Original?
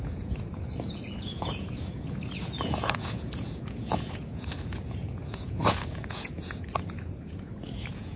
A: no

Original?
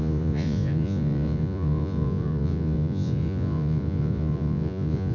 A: no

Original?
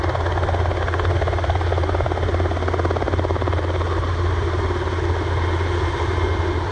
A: yes